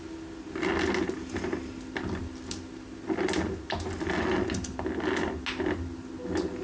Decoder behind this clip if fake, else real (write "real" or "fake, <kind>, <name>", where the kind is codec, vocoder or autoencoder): real